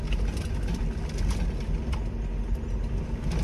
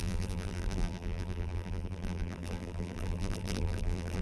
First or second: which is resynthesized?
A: second